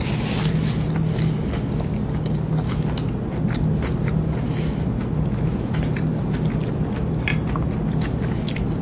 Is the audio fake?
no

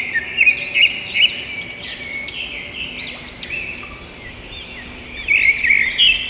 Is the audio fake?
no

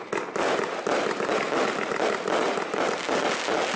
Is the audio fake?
no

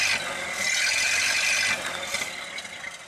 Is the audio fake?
no